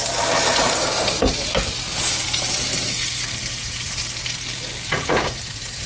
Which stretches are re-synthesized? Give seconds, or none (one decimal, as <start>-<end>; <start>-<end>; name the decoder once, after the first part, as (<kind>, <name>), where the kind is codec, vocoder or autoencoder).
3.5-4.0 (vocoder, Vocos); 4.9-5.9